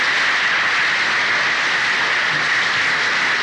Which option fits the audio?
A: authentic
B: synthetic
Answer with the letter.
A